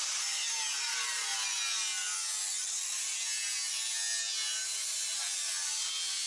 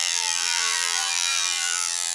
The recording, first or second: first